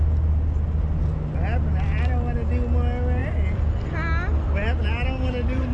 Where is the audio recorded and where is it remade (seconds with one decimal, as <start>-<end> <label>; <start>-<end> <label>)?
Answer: 0.0-5.7 recorded